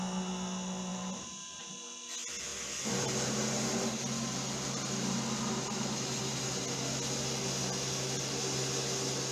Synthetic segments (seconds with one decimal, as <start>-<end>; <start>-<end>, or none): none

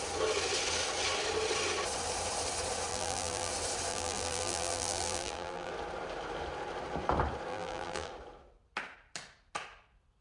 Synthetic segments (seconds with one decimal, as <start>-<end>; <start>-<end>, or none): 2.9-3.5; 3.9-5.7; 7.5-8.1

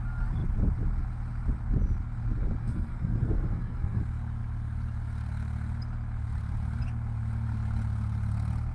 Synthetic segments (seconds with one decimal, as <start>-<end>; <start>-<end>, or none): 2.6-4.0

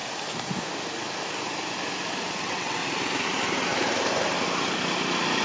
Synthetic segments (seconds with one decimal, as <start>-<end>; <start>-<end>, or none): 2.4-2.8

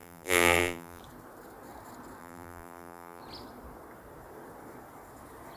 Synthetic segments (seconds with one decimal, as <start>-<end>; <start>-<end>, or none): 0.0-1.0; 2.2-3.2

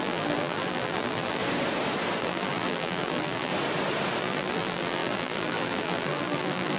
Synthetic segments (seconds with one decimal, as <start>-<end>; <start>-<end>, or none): 0.0-1.4; 2.2-3.5; 4.2-6.8